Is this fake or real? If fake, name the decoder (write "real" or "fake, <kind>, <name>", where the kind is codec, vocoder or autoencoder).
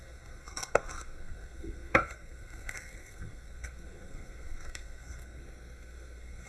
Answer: fake, codec, SNAC